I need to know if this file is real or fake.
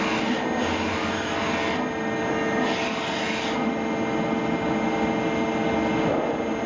real